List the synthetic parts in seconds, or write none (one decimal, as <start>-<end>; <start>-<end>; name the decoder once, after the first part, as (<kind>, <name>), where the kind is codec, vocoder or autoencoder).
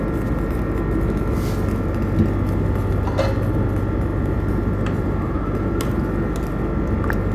4.1-6.0 (vocoder, BigVGAN v2)